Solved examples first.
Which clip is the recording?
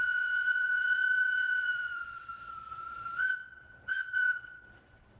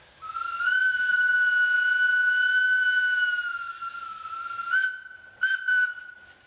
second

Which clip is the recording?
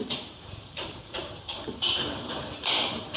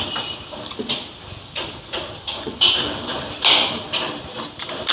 second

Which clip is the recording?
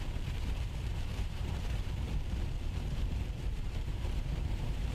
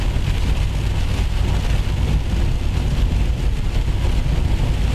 second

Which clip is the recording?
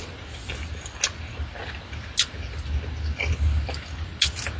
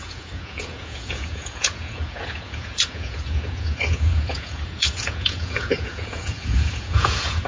first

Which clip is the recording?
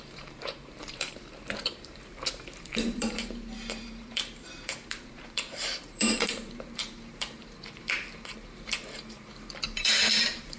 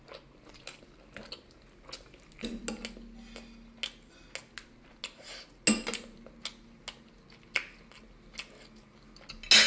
second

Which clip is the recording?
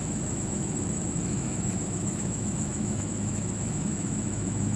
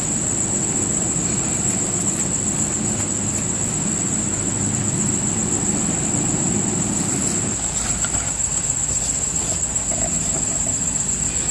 second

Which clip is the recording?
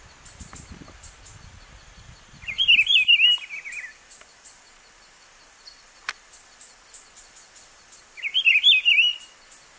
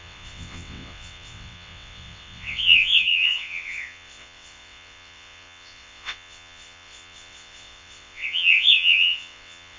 first